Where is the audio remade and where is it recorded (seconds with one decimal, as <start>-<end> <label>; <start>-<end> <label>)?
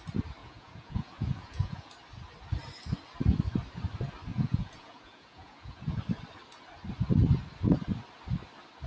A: 0.0-0.4 recorded; 0.4-1.9 remade; 1.9-4.3 recorded; 4.3-6.0 remade; 6.0-8.9 recorded